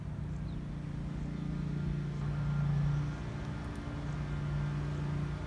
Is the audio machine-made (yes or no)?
no